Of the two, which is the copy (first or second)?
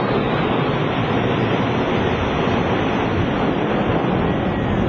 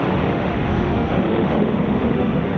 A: second